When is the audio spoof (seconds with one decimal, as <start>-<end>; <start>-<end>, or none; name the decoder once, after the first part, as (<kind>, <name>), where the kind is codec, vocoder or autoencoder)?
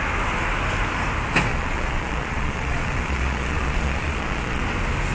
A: 1.5-4.6 (vocoder, Vocos)